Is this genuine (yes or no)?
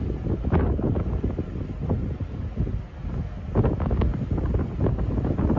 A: yes